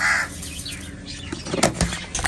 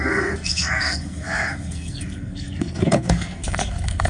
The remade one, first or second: second